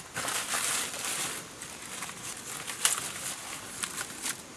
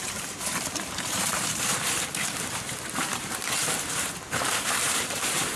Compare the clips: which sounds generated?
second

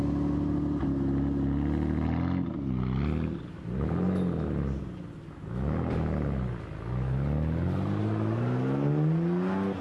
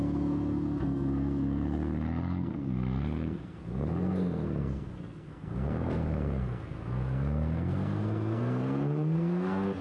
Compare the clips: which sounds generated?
second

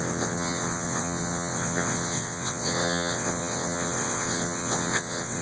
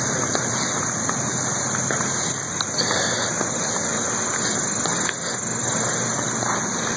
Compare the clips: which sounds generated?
first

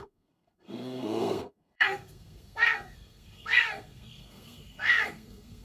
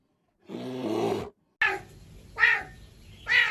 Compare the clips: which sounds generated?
first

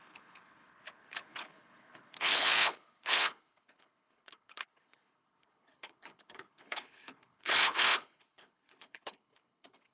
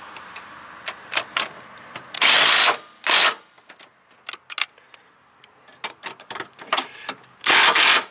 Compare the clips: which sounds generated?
first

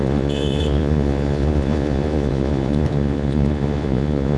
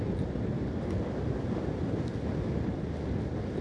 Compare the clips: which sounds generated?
first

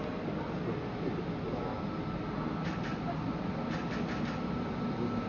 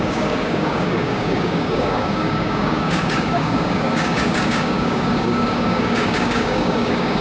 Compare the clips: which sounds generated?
second